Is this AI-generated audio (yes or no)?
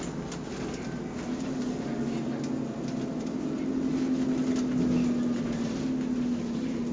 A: no